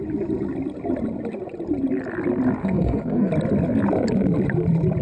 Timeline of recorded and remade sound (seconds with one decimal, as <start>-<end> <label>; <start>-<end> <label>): 0.0-2.6 recorded; 2.6-3.3 remade; 3.3-5.0 recorded